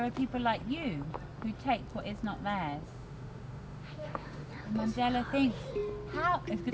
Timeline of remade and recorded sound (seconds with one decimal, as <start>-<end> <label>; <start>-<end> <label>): 0.0-2.9 recorded; 2.9-4.5 remade; 4.5-6.7 recorded